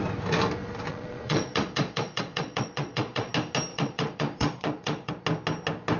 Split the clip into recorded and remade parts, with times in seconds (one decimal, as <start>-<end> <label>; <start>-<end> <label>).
0.0-0.9 recorded; 0.9-3.3 remade; 3.3-3.7 recorded; 3.7-5.1 remade; 5.1-6.0 recorded